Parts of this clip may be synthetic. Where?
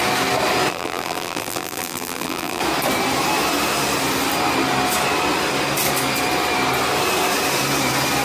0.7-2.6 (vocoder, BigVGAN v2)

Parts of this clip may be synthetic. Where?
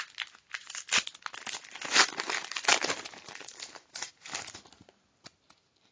2.7-4.6 (vocoder, BigVGAN v2)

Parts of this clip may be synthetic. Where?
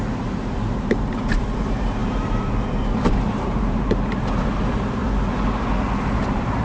0.0-5.0 (vocoder, BigVGAN v2); 5.8-6.6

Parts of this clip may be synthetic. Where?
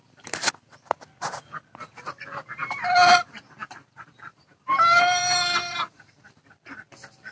2.6-6.1 (vocoder, BigVGAN v2)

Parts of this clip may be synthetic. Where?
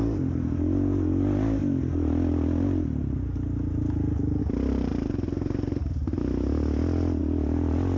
4.9-6.2 (vocoder, BigVGAN v2)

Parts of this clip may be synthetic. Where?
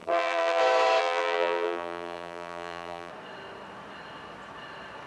0.0-0.6 (vocoder, BigVGAN v2); 1.0-3.1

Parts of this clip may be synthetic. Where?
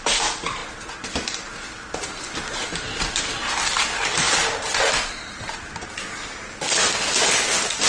0.0-0.6 (vocoder, BigVGAN v2); 3.2-4.1; 5.9-7.9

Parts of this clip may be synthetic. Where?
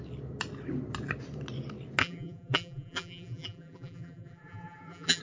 2.0-5.2 (vocoder, BigVGAN v2)